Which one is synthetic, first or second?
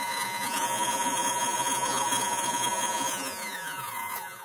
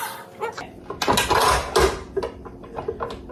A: first